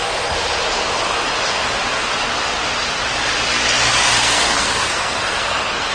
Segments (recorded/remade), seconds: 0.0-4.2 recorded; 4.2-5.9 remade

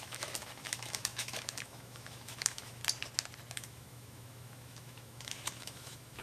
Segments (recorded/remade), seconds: 0.0-2.8 remade; 2.8-3.5 recorded; 3.5-6.2 remade

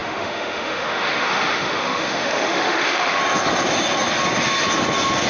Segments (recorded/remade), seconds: 0.0-3.2 remade; 3.2-5.3 recorded

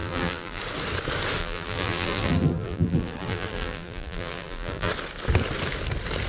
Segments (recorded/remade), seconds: 0.0-0.6 remade; 0.6-1.4 recorded; 1.4-4.9 remade; 4.9-6.3 recorded

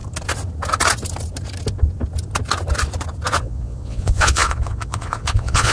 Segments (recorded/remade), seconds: 0.0-3.4 recorded; 3.4-5.7 remade

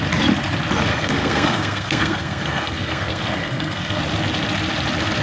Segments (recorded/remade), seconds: 0.0-0.9 recorded; 0.9-4.0 remade; 4.0-5.2 recorded

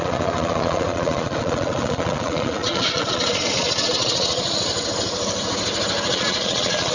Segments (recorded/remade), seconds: 0.0-4.7 remade; 4.7-6.1 recorded; 6.1-6.9 remade